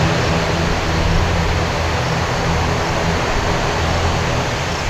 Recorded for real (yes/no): yes